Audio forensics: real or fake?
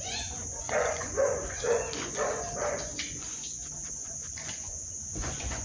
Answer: fake